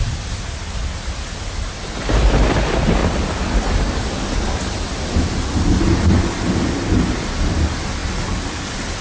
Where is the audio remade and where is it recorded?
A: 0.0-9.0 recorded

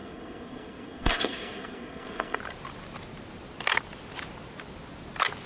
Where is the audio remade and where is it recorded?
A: 0.0-2.4 remade; 2.4-5.5 recorded

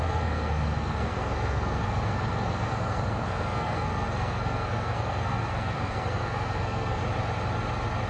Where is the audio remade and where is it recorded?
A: 0.0-7.0 remade; 7.0-8.1 recorded

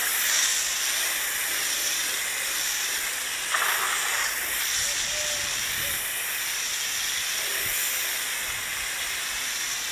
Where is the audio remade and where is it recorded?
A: 0.0-9.9 recorded